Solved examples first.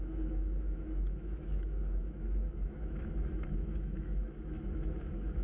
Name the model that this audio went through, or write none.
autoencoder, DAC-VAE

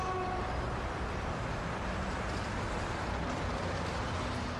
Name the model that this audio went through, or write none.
none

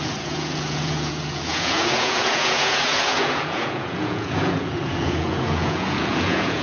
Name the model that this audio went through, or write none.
vocoder, Vocos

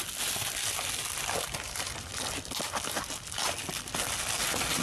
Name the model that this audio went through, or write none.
none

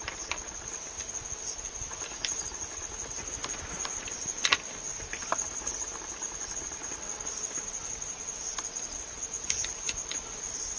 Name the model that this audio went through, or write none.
none